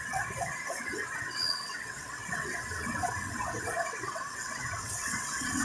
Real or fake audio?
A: fake